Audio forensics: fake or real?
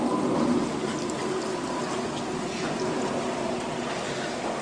real